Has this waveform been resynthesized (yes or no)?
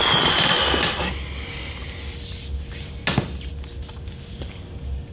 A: no